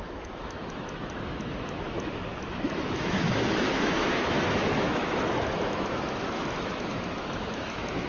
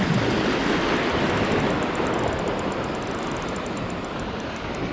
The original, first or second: second